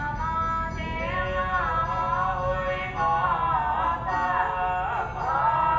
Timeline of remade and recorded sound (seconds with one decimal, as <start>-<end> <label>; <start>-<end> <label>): 0.0-5.8 recorded